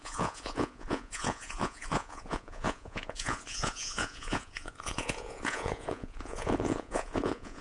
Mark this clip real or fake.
fake